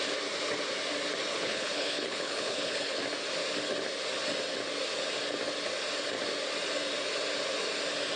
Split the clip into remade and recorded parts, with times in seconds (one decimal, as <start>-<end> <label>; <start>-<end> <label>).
0.0-1.3 recorded; 1.3-3.0 remade; 3.0-8.2 recorded